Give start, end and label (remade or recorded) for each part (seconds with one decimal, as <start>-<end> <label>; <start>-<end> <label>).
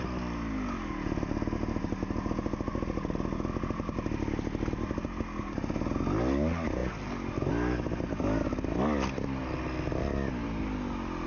0.0-11.3 recorded